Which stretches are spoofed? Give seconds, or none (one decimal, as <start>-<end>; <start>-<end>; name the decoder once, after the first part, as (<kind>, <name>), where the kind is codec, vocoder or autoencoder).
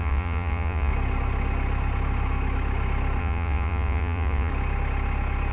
0.0-0.9 (vocoder, Vocos); 3.2-4.5